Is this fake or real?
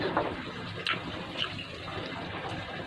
real